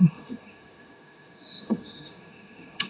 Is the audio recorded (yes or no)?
no